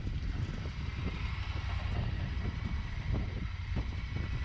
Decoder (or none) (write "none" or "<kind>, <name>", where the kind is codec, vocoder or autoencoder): none